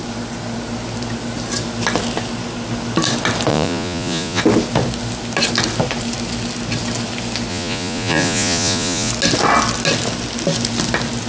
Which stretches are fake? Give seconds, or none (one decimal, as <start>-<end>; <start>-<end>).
3.5-4.4; 7.5-9.1